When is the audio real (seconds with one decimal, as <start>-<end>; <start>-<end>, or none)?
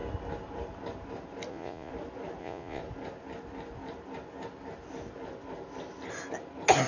0.0-1.5; 1.9-2.4; 2.8-6.9